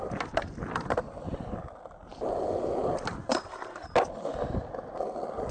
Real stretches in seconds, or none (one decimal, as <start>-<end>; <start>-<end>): 0.0-5.5